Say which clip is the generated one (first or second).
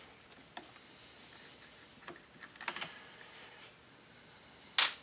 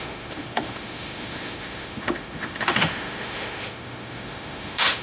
second